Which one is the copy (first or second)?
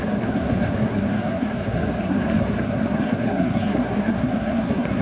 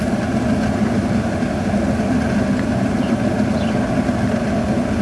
first